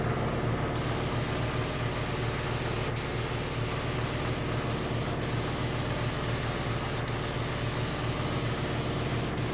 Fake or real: real